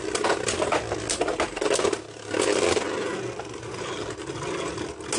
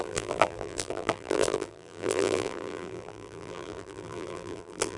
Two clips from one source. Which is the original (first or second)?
first